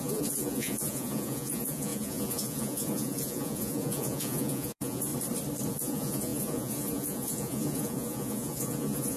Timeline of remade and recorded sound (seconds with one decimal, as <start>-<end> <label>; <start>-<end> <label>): 0.0-5.1 remade; 5.1-5.7 recorded; 5.7-9.2 remade